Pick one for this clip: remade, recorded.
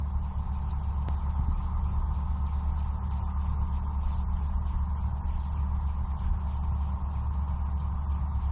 recorded